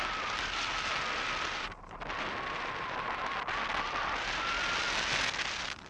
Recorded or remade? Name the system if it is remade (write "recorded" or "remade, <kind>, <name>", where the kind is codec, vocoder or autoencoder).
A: recorded